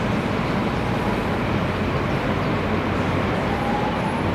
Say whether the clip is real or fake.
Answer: real